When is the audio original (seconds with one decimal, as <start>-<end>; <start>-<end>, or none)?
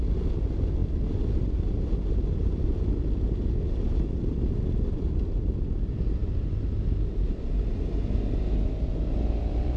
0.0-9.8